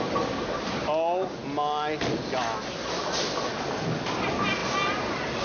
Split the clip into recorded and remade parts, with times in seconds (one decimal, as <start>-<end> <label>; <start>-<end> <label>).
0.0-5.4 recorded